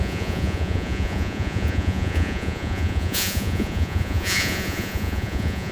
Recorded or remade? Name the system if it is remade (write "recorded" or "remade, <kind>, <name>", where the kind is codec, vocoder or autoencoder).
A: remade, vocoder, Vocos